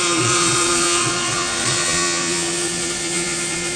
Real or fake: fake